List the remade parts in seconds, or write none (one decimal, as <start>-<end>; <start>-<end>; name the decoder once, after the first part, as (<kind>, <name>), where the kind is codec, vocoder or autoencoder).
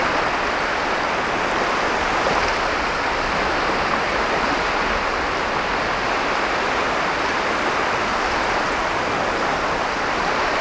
8.1-8.6 (vocoder, BigVGAN v2)